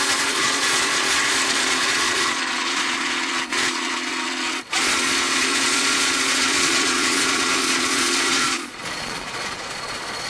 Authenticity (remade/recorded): remade